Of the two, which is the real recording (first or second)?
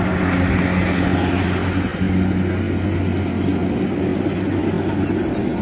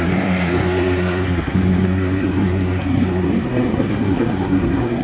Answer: first